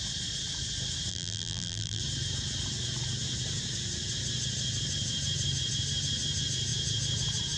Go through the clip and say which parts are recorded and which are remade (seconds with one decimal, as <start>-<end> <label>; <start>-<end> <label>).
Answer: 0.0-1.1 recorded; 1.1-2.0 remade; 2.0-7.6 recorded